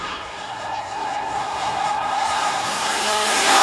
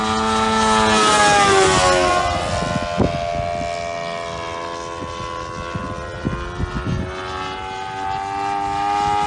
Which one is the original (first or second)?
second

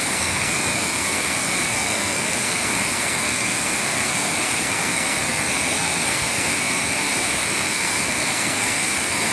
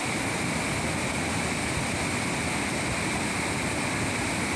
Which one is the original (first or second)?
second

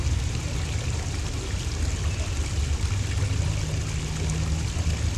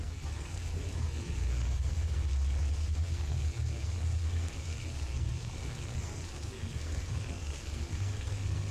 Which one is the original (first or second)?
first